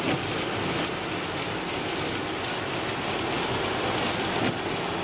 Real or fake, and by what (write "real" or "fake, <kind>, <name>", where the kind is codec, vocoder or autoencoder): real